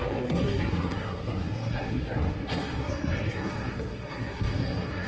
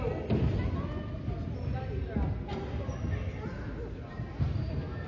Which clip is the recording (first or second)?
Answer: second